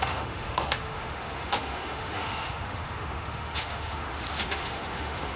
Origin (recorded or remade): remade